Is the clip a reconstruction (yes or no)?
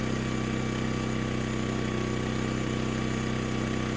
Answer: no